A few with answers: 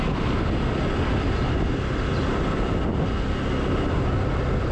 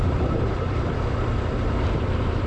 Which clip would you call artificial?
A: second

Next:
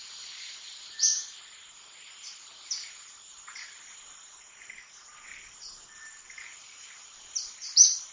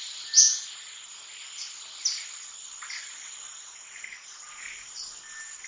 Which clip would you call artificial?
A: first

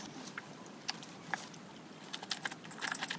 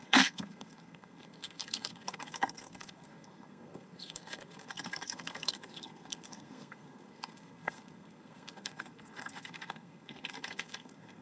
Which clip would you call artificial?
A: second